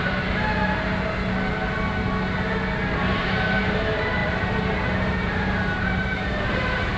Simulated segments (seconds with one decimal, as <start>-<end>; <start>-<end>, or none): 0.0-0.6; 2.9-7.0